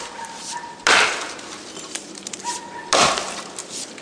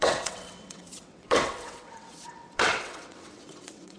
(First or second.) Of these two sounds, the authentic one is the first